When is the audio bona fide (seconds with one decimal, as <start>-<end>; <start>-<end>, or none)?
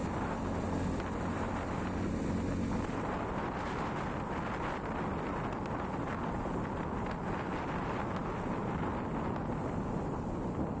0.0-10.8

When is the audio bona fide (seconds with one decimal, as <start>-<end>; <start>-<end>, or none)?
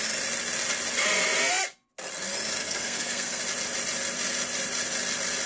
0.0-2.6; 3.4-5.5